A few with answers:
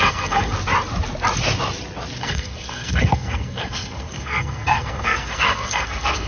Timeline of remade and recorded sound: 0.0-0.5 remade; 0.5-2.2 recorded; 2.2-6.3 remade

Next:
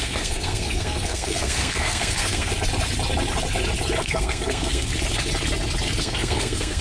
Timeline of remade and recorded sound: 0.0-2.5 remade; 2.5-4.0 recorded; 4.0-4.9 remade; 4.9-6.0 recorded; 6.0-6.8 remade

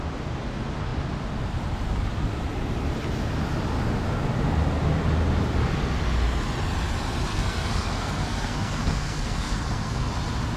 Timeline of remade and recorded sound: 0.0-7.3 recorded; 7.3-10.1 remade; 10.1-10.6 recorded

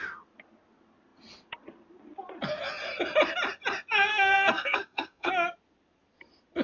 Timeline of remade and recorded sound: 0.0-4.1 recorded; 4.1-5.3 remade; 5.3-6.6 recorded

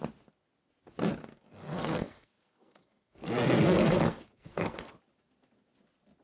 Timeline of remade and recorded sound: 0.0-1.2 recorded; 1.2-4.9 remade; 4.9-6.2 recorded

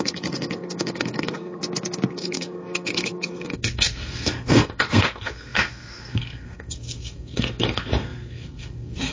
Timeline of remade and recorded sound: 0.0-1.6 remade; 1.6-2.1 recorded; 2.1-9.1 remade